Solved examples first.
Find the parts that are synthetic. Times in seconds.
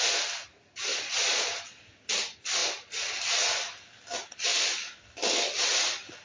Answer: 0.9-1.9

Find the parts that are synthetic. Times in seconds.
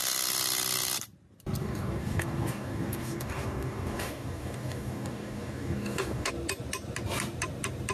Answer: 1.6-6.3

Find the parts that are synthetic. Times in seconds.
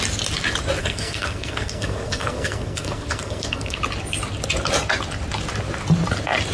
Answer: 0.8-3.8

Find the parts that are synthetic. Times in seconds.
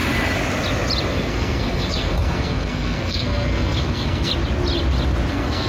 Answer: 1.1-4.3; 5.3-5.7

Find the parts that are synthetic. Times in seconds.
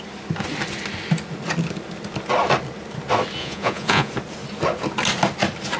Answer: 3.4-4.1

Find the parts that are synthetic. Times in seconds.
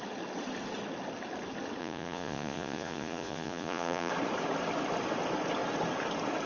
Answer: 1.8-4.1